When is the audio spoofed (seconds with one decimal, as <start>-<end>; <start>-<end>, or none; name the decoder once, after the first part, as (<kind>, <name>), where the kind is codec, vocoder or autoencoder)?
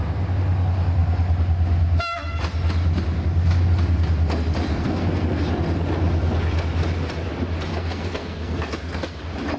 4.7-5.4 (codec, SNAC); 7.7-9.2